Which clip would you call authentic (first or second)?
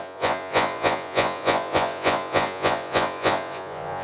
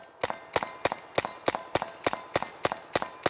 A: second